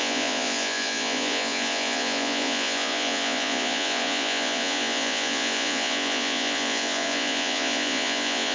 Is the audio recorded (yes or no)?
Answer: no